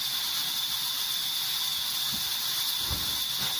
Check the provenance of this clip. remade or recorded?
recorded